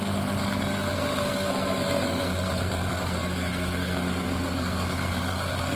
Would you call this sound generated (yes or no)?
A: yes